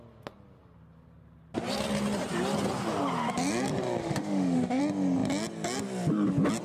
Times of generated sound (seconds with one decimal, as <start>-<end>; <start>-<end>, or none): 4.0-4.8